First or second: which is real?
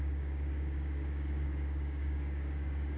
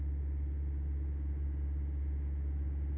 second